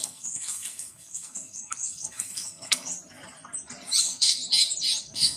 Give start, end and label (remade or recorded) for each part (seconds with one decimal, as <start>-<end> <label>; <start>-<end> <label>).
0.0-2.9 remade; 2.9-4.0 recorded; 4.0-4.4 remade; 4.4-5.0 recorded; 5.0-5.4 remade

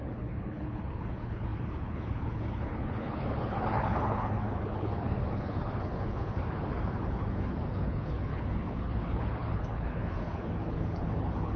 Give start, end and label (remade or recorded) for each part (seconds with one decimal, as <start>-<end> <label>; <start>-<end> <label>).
0.0-11.6 remade